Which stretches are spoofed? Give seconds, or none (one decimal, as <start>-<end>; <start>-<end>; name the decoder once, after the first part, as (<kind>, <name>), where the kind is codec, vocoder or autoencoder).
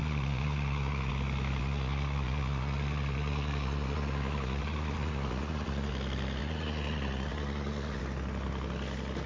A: 0.0-1.1 (vocoder, Vocos); 1.6-5.9; 6.4-8.0